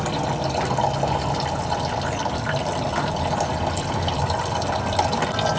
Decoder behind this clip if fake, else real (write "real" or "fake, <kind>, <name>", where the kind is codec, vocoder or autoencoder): real